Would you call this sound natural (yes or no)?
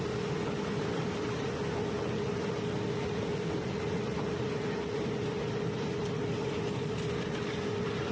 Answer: yes